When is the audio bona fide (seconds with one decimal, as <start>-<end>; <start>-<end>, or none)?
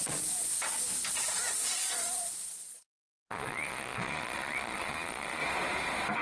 0.5-1.3; 5.4-6.2